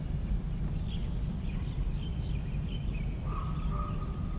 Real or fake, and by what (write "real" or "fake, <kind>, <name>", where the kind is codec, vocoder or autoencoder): real